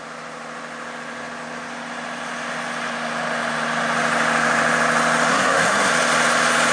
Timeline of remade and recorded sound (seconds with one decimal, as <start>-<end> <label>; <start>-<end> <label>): 0.0-5.3 recorded; 5.3-5.9 remade; 5.9-6.7 recorded